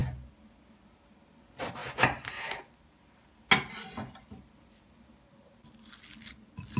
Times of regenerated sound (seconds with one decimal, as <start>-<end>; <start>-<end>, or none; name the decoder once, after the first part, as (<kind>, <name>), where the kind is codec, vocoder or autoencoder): none